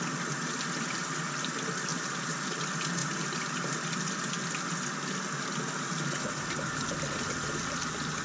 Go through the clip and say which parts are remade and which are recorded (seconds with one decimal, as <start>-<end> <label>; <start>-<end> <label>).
0.0-1.9 recorded; 1.9-2.6 remade; 2.6-8.2 recorded